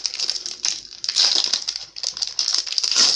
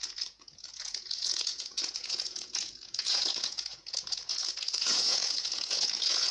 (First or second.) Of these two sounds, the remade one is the second